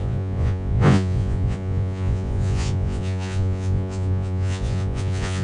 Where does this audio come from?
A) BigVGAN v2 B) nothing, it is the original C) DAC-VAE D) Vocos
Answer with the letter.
D